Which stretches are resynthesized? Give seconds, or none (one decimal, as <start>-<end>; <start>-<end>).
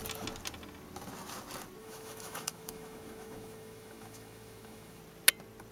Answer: 1.8-5.0